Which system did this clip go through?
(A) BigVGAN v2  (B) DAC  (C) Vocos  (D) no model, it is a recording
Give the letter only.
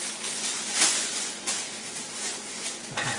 C